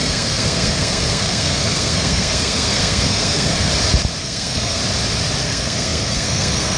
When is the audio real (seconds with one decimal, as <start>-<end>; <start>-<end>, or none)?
3.7-4.2; 4.8-5.4